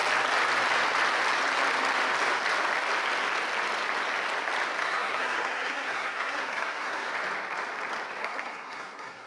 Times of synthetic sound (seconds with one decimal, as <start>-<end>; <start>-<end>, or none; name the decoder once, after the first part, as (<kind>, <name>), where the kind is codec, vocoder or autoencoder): 4.8-7.1 (codec, SNAC); 8.2-9.3